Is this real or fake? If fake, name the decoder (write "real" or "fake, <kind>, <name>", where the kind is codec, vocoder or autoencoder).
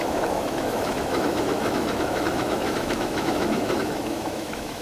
fake, autoencoder, DAC-VAE